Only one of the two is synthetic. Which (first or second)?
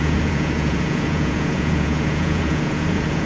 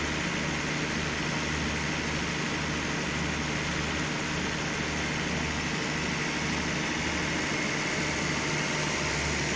first